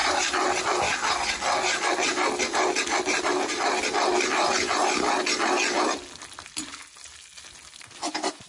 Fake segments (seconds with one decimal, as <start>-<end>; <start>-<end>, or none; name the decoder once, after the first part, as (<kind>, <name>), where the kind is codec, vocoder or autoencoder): none